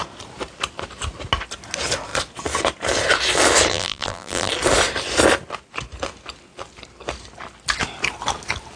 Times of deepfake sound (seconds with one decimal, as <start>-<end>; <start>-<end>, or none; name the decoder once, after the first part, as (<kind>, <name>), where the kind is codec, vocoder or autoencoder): 3.7-4.5 (vocoder, BigVGAN v2)